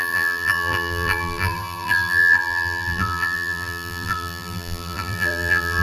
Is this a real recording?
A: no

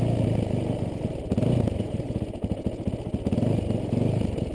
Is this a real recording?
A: yes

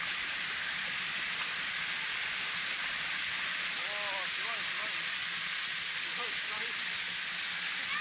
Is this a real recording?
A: yes